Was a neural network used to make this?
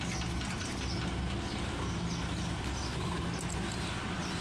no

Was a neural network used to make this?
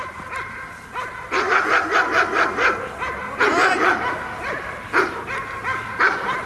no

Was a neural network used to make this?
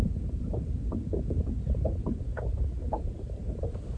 no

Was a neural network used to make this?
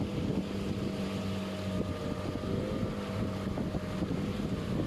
no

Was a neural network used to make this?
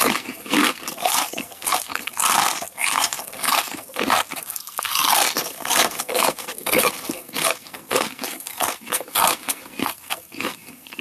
yes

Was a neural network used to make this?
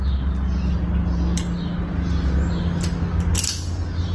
no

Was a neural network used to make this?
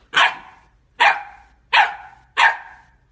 no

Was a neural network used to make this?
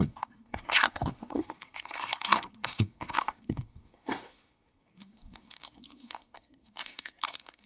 yes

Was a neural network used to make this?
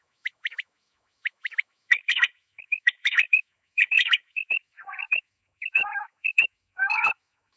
yes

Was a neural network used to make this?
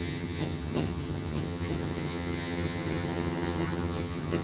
yes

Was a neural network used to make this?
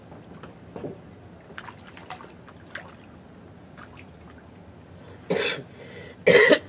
no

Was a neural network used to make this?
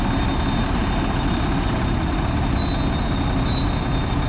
no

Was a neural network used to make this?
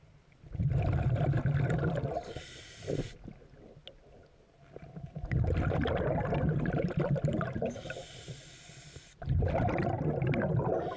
no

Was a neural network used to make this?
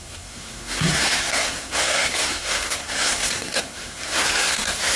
yes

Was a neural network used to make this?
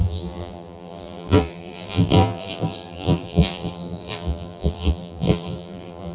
yes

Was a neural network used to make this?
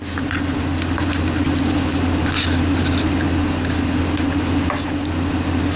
no